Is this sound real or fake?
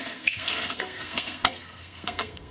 fake